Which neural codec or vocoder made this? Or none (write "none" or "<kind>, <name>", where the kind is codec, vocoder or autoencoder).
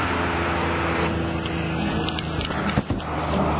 none